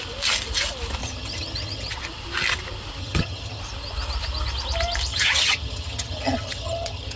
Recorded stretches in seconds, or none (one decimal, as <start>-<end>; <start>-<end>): 0.0-1.0; 1.9-3.0; 3.6-5.1